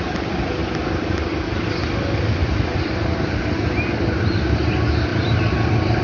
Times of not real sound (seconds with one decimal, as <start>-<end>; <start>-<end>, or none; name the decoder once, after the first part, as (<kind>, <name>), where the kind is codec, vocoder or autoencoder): 2.4-3.3 (vocoder, BigVGAN v2)